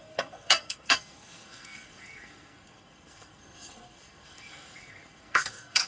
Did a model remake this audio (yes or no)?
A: yes